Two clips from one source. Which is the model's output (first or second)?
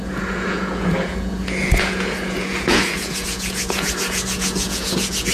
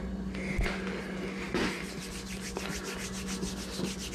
first